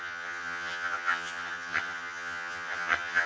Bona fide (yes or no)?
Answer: no